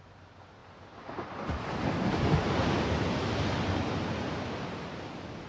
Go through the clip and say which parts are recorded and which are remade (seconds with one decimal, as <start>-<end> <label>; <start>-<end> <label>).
0.0-5.5 recorded